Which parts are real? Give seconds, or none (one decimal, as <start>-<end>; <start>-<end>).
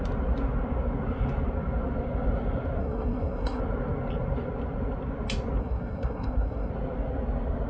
0.0-2.8; 3.6-5.6; 6.7-7.7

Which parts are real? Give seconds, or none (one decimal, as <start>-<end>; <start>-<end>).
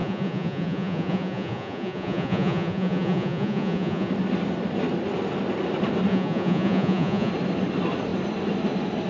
4.1-6.1; 7.3-9.1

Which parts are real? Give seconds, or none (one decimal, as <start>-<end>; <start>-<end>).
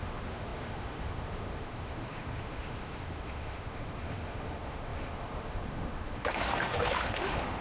none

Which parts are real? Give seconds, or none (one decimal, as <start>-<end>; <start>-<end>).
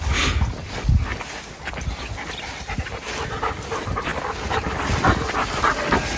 0.0-6.2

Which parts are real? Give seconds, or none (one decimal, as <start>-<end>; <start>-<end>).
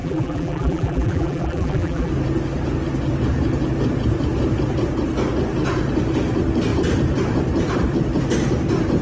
2.1-9.0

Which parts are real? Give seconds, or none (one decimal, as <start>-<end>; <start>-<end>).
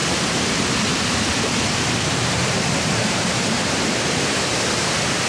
0.5-0.9; 4.1-5.3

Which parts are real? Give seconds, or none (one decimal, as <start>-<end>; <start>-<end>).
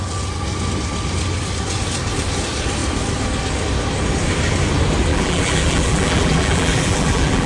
0.0-5.1